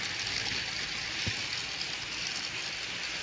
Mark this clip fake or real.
real